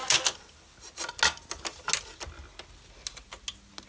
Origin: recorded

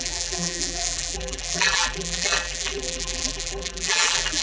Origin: remade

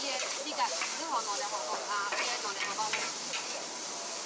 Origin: remade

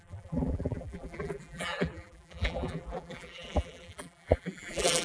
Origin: remade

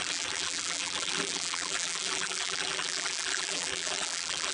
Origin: remade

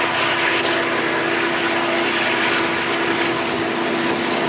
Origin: recorded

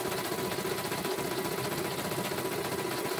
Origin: recorded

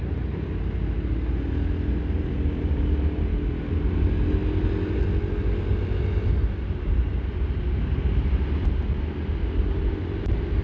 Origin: recorded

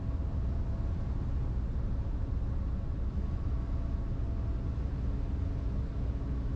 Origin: recorded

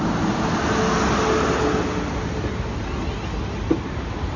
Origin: recorded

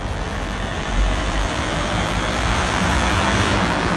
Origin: remade